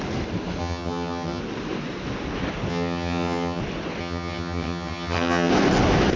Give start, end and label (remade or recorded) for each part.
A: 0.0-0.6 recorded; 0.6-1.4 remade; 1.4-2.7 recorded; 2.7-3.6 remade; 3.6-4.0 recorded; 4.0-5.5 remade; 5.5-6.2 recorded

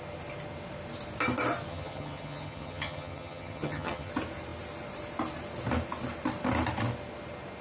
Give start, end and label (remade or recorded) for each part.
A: 0.0-1.7 recorded; 1.7-4.1 remade; 4.1-7.6 recorded

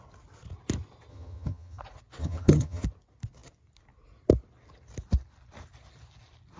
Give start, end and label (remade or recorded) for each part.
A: 0.0-1.1 recorded; 1.1-1.8 remade; 1.8-2.2 recorded; 2.2-2.8 remade; 2.8-6.6 recorded

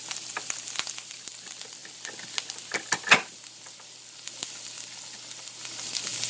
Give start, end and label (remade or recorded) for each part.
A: 0.0-6.3 recorded

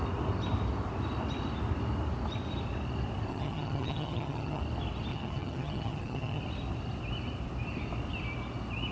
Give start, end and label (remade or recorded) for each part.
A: 0.0-3.3 recorded; 3.3-4.6 remade; 4.6-5.1 recorded; 5.1-6.4 remade; 6.4-8.9 recorded